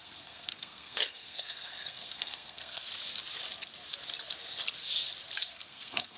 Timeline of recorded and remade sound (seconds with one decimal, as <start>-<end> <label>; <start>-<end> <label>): 0.0-2.9 remade; 2.9-5.5 recorded; 5.5-6.2 remade

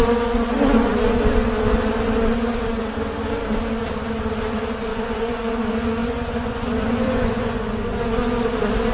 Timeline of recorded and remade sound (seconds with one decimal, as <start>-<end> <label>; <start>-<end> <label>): 0.0-4.9 recorded; 4.9-5.5 remade; 5.5-6.0 recorded; 6.0-8.0 remade; 8.0-8.9 recorded

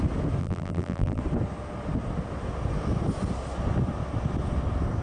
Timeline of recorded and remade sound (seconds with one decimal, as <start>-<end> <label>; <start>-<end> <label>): 0.0-0.4 recorded; 0.4-1.2 remade; 1.2-5.0 recorded

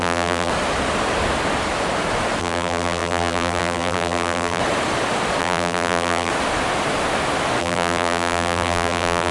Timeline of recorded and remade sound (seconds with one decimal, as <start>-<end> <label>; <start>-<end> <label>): 0.0-0.5 remade; 0.5-2.4 recorded; 2.4-4.6 remade; 4.6-5.4 recorded; 5.4-6.3 remade; 6.3-7.6 recorded; 7.6-9.3 remade

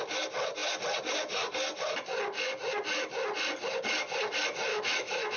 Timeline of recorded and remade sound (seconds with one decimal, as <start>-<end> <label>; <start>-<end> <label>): 0.0-4.7 recorded; 4.7-5.4 remade

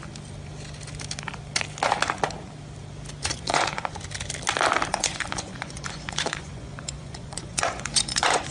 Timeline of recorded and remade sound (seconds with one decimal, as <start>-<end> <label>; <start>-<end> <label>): 0.0-3.2 recorded; 3.2-3.9 remade; 3.9-4.9 recorded; 4.9-8.5 remade